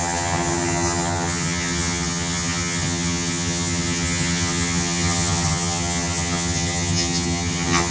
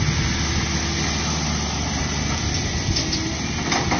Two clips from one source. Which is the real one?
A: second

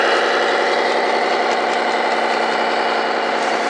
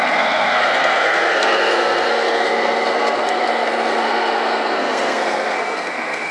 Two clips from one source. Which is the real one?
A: first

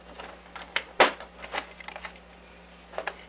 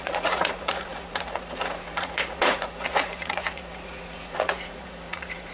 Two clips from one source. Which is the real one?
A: first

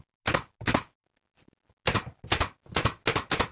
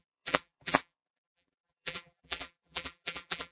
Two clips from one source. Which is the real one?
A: first